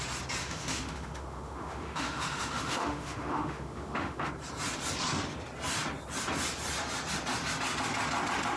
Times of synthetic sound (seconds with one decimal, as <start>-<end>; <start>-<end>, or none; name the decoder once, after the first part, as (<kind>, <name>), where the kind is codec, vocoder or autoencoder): 0.4-4.3 (autoencoder, DAC-VAE)